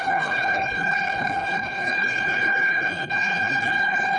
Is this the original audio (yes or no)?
no